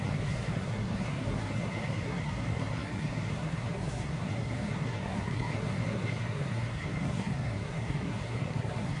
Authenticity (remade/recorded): remade